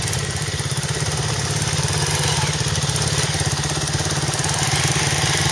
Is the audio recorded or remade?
recorded